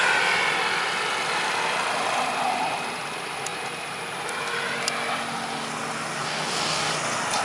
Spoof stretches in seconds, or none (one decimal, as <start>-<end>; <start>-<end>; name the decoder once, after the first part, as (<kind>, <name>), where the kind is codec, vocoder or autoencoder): 6.2-6.9 (codec, DAC)